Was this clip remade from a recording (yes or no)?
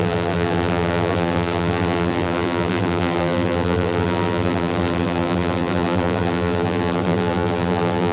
yes